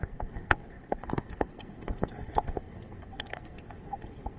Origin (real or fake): fake